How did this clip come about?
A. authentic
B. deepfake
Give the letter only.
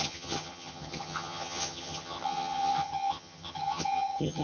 B